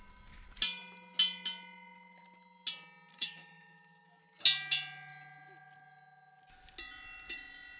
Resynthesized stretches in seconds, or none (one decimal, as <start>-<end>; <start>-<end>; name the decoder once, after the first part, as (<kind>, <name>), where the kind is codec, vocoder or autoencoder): 3.1-4.2 (autoencoder, DAC-VAE)